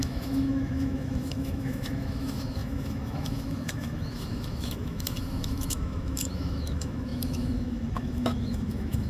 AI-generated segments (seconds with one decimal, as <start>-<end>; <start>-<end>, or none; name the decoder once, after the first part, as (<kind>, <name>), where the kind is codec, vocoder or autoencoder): 0.0-9.1 (autoencoder, DAC-VAE)